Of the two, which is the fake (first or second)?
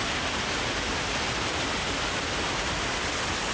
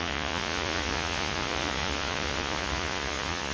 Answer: second